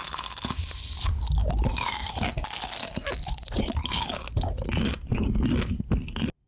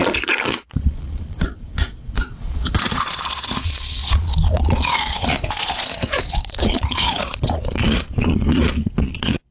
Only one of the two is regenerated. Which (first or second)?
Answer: second